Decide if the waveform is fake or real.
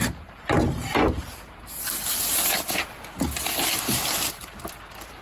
real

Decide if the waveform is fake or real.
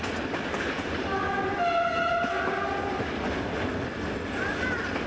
real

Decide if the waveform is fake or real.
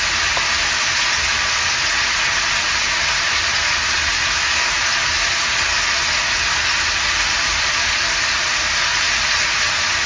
real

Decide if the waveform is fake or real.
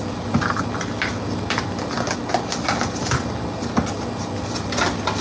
real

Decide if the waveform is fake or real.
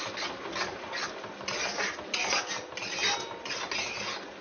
real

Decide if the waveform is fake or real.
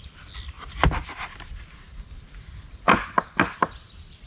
real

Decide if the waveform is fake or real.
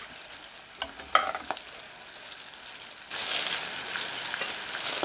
real